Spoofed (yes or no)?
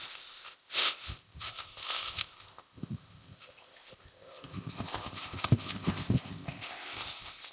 yes